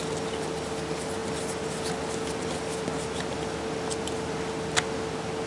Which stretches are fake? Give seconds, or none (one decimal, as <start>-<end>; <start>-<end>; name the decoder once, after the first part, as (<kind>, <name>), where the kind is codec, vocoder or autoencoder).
none